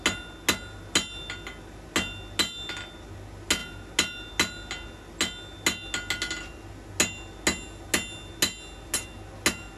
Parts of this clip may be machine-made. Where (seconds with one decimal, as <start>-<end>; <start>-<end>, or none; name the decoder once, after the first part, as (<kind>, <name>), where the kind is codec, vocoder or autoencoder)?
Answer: none